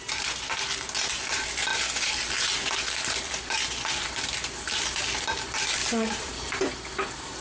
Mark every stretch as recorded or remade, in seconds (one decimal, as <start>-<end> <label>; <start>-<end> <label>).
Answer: 0.0-5.8 recorded; 5.8-6.7 remade; 6.7-7.4 recorded